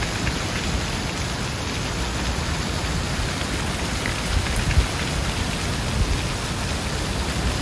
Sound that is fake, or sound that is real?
real